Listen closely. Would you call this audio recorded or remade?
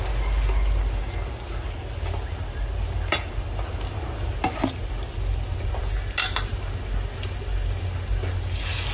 recorded